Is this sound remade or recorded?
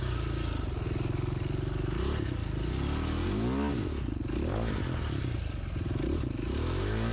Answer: recorded